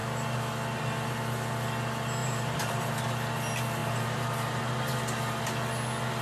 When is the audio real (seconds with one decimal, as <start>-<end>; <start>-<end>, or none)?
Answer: 0.0-2.2; 2.9-3.8; 4.6-6.2